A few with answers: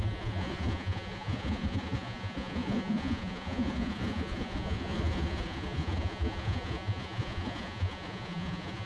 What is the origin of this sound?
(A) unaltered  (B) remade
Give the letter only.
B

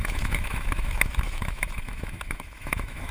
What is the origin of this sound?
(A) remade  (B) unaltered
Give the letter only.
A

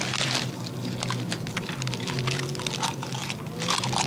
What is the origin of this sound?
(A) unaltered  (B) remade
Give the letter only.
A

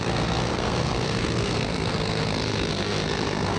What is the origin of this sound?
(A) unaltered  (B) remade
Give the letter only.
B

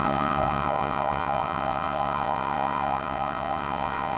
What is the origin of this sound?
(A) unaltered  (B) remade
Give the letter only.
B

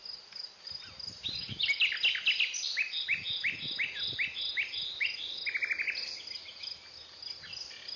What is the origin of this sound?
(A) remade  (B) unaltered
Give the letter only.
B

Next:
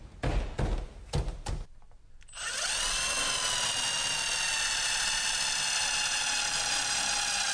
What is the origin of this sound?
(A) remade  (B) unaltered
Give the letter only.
B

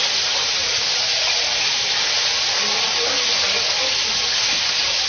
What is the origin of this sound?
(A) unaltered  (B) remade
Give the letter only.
B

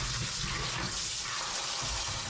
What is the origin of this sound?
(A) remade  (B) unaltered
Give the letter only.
B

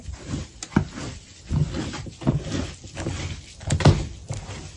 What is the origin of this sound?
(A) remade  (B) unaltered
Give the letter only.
B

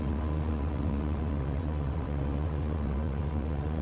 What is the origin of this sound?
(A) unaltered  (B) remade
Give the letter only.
B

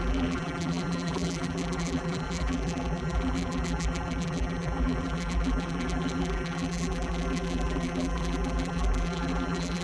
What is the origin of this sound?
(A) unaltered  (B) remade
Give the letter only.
B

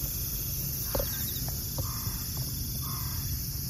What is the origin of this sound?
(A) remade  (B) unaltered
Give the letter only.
B